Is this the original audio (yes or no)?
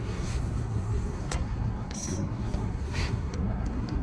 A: no